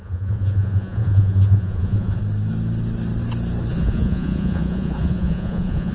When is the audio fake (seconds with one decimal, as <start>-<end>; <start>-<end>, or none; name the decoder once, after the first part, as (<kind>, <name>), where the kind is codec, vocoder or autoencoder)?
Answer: 0.0-2.2 (vocoder, Vocos); 3.7-5.9